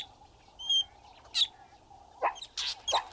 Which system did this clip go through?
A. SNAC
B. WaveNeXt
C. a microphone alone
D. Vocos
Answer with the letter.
C